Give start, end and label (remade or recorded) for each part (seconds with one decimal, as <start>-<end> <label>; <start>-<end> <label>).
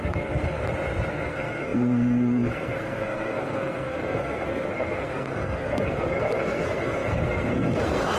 0.0-0.6 remade; 0.6-1.1 recorded; 1.1-8.2 remade